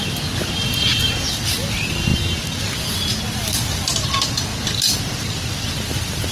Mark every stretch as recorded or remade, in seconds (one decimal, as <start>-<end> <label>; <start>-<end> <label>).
0.0-6.3 recorded